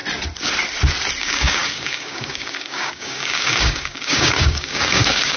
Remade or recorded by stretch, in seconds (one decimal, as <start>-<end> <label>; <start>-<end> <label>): 0.0-1.2 recorded; 1.2-5.4 remade